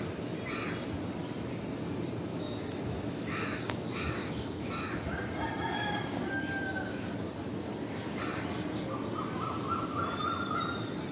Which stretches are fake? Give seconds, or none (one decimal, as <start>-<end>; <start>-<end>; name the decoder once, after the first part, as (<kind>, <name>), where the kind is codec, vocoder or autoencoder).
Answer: 2.3-3.7 (autoencoder, DAC-VAE); 4.2-4.7